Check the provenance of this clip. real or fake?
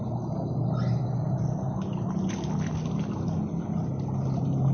real